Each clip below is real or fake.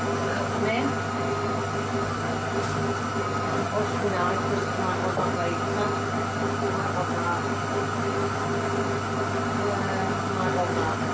real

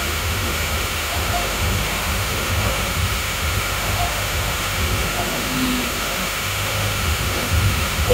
fake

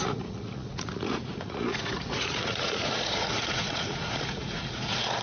fake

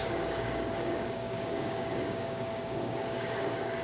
fake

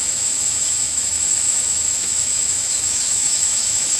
fake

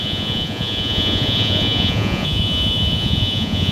fake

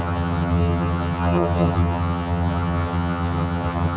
fake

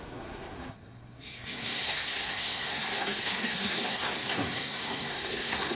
fake